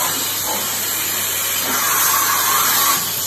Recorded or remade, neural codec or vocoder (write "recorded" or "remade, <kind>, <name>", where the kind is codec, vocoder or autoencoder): recorded